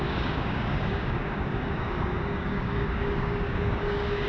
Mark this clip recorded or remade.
remade